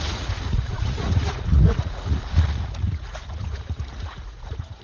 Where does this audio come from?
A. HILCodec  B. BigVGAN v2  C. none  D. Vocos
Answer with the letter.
D